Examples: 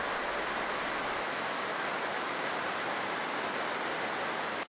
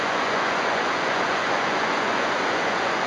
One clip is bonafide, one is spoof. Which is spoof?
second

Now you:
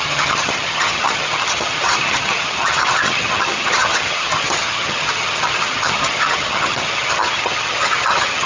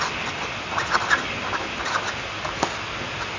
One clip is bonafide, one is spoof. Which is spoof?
first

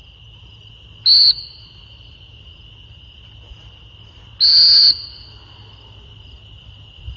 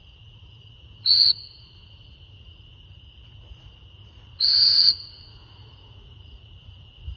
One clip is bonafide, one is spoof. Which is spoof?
second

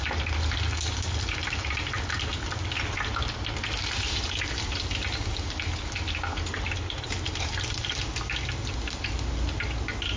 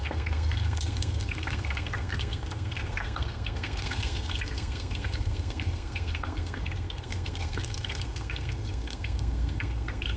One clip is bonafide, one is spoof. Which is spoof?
second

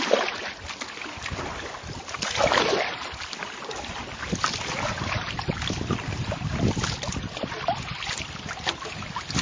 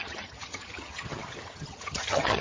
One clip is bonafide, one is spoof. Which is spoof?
second